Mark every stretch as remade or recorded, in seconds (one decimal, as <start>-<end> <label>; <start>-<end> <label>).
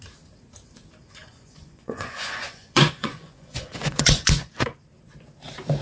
0.0-1.0 recorded; 1.0-4.5 remade; 4.5-5.8 recorded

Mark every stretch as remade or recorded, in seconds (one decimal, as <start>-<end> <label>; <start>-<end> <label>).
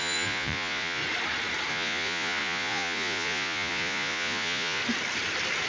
0.0-1.0 remade; 1.0-1.7 recorded; 1.7-4.8 remade; 4.8-5.7 recorded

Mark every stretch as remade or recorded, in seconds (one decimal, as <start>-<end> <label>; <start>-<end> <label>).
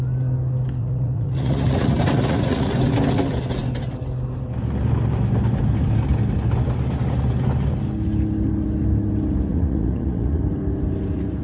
0.0-0.8 recorded; 0.8-2.7 remade; 2.7-9.5 recorded; 9.5-10.4 remade; 10.4-11.4 recorded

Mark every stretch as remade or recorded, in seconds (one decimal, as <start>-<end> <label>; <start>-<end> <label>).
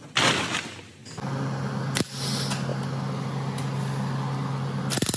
0.0-5.2 recorded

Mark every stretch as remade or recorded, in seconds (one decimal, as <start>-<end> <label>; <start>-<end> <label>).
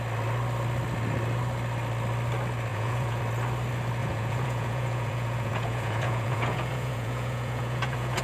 0.0-2.7 recorded; 2.7-3.2 remade; 3.2-4.0 recorded; 4.0-8.2 remade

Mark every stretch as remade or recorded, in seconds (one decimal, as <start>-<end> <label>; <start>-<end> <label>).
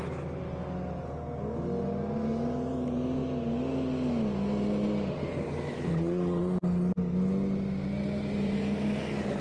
0.0-9.4 recorded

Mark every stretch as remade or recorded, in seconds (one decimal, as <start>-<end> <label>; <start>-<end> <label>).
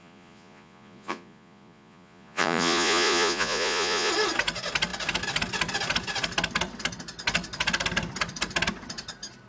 0.0-4.1 remade; 4.1-9.5 recorded